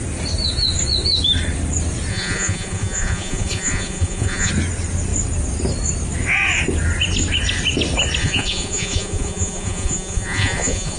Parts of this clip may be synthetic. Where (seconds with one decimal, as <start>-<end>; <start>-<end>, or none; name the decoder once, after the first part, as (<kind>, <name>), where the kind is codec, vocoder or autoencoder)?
2.1-4.5 (vocoder, Vocos); 8.2-11.0